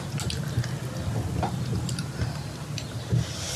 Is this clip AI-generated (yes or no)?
no